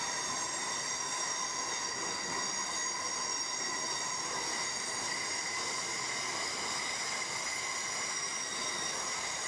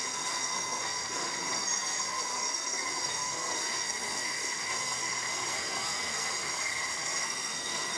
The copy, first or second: second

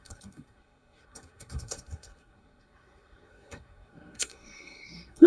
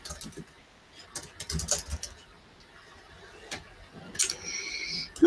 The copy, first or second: first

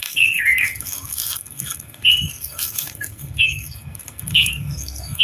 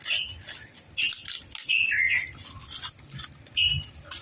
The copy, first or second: first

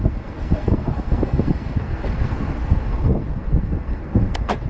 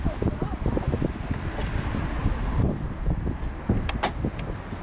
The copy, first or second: first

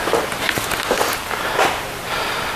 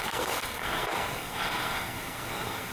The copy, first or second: second